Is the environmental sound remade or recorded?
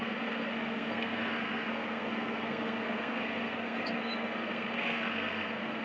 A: remade